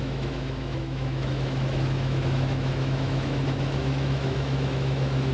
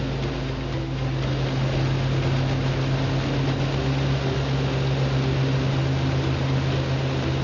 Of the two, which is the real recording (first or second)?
second